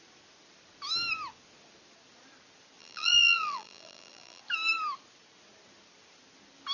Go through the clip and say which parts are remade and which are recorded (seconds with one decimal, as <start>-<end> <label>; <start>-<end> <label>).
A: 0.0-2.8 recorded; 2.8-4.4 remade; 4.4-6.7 recorded